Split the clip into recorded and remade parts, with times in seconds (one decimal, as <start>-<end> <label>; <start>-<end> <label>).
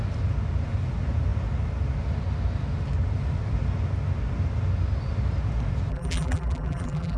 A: 0.0-5.9 recorded; 5.9-7.2 remade